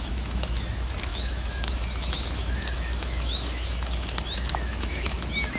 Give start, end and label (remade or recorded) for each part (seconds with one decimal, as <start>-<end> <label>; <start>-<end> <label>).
0.0-5.6 remade